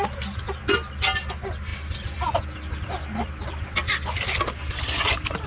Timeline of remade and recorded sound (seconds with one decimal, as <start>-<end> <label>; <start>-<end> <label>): 0.0-5.5 recorded